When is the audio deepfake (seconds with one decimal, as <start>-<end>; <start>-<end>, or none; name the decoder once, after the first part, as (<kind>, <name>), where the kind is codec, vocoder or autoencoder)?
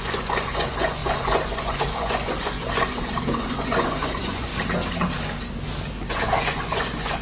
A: 0.0-4.5 (vocoder, Vocos); 6.1-7.2